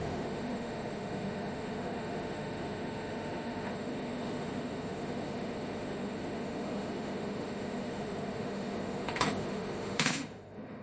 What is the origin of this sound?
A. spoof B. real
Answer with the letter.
A